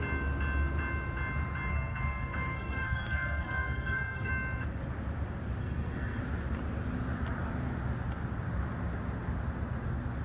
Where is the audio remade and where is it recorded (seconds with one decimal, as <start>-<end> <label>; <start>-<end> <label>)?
0.0-1.7 recorded; 1.7-4.3 remade; 4.3-5.6 recorded; 5.6-6.2 remade; 6.2-10.2 recorded